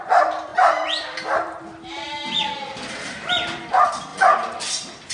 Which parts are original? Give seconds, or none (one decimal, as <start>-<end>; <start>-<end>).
none